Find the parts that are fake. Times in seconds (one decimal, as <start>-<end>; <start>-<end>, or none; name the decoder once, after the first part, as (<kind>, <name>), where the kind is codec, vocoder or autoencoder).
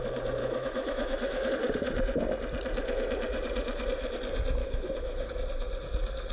0.4-1.5 (autoencoder, DAC-VAE); 4.6-5.3